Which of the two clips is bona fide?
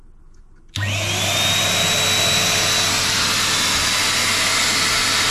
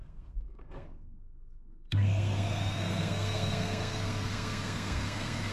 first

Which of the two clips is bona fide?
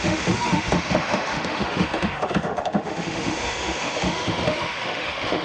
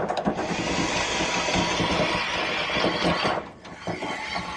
second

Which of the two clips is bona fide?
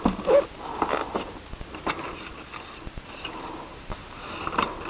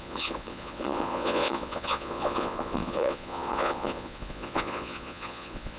first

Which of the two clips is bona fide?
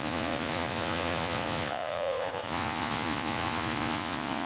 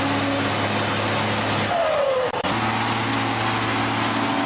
second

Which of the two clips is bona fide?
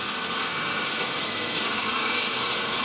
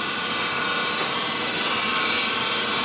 second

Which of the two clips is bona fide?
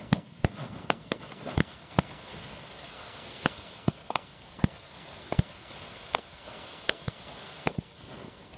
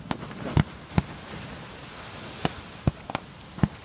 second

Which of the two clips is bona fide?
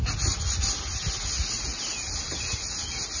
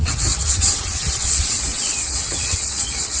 first